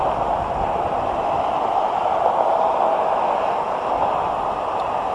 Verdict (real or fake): real